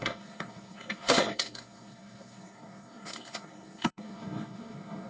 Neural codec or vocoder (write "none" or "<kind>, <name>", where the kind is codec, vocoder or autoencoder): codec, SNAC